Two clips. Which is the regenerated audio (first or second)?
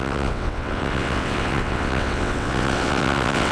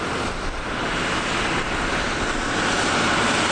first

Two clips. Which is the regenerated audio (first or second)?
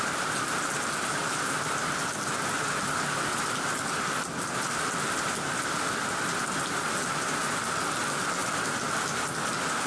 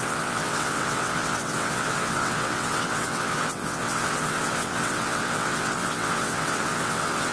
second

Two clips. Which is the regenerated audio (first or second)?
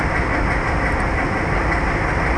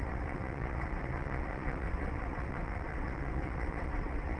second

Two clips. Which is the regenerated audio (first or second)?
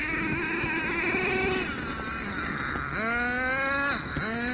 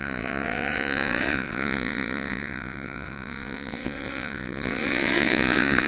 second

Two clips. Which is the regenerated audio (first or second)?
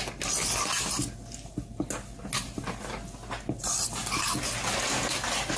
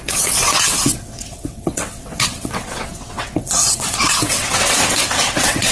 second